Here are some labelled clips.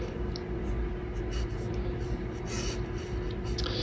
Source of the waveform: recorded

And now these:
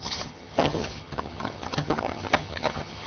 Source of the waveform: remade